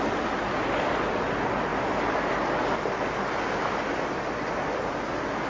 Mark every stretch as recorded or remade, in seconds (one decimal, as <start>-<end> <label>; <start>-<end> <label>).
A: 0.0-5.5 recorded